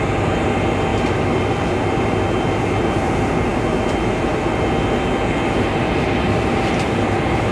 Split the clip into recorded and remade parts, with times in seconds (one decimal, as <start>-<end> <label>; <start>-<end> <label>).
0.0-7.5 recorded

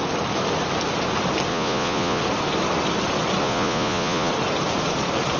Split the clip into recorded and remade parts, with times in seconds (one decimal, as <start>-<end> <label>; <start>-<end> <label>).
0.0-1.5 recorded; 1.5-2.2 remade; 2.2-3.4 recorded; 3.4-4.3 remade; 4.3-5.4 recorded

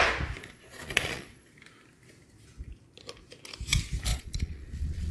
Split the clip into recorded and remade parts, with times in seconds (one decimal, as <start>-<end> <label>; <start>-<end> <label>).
0.0-0.4 recorded; 0.4-1.5 remade; 1.5-4.1 recorded; 4.1-5.1 remade

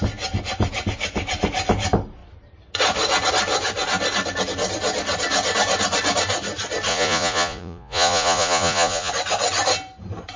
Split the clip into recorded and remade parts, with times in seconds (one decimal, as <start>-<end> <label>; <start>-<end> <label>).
0.0-6.9 recorded; 6.9-9.1 remade; 9.1-10.4 recorded

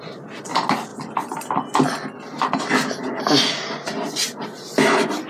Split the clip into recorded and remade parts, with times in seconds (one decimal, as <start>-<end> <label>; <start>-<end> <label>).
0.0-5.3 recorded

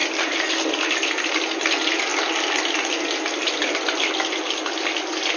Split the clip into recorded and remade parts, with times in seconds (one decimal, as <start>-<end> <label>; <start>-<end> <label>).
0.0-5.4 recorded

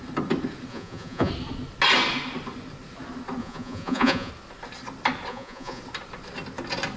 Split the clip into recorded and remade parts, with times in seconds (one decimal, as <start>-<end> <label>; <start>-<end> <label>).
0.0-0.7 recorded; 0.7-1.3 remade; 1.3-3.4 recorded; 3.4-4.3 remade; 4.3-5.3 recorded; 5.3-5.8 remade; 5.8-7.0 recorded